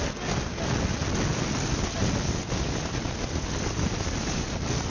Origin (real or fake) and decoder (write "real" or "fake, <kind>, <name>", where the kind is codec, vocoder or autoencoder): real